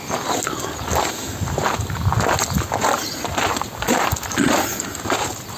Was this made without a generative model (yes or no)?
yes